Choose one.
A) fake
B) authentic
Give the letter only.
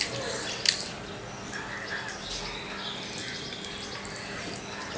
B